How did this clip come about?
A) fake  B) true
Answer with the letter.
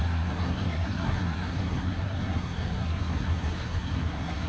A